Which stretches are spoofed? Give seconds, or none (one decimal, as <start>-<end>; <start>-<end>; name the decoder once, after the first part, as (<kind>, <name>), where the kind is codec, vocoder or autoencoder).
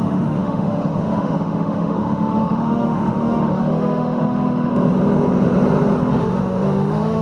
0.0-4.7 (autoencoder, DAC-VAE); 6.2-7.2